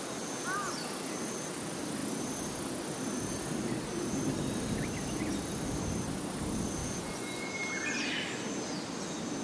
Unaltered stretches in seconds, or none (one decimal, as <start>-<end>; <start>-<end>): 0.0-6.8; 7.5-9.4